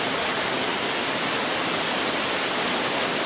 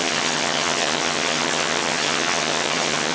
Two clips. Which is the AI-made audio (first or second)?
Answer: second